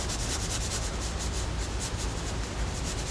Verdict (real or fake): fake